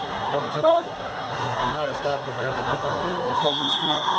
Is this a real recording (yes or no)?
no